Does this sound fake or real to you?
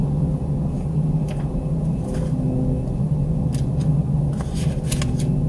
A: real